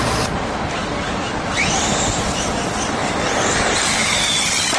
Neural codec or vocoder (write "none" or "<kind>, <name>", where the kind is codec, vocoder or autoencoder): none